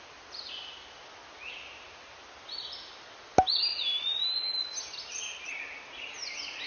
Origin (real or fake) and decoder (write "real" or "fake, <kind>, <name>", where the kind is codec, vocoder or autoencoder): real